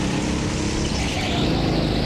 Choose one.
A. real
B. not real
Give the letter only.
A